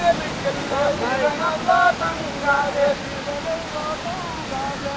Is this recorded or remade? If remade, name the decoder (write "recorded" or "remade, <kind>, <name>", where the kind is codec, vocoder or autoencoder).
recorded